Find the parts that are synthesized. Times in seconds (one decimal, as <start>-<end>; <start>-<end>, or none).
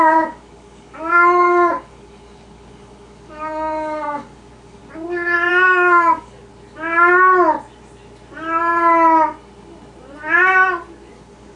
0.0-4.8; 5.5-6.5; 11.1-11.6